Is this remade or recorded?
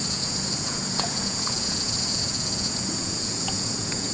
remade